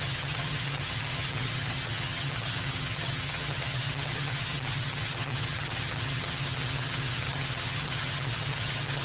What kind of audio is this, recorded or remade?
remade